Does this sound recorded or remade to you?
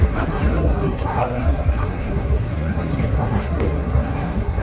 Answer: remade